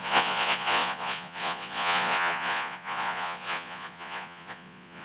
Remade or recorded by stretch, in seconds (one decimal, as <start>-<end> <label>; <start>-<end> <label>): 0.0-5.0 remade